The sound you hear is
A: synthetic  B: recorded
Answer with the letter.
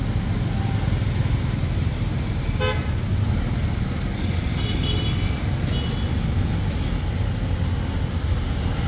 B